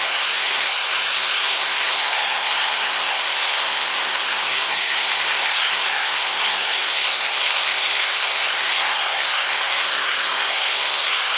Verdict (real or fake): fake